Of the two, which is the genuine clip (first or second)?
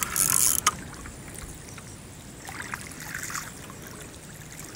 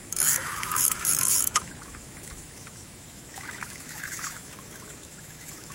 first